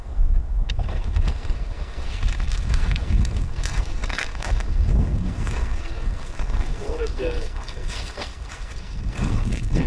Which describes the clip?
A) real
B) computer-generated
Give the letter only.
B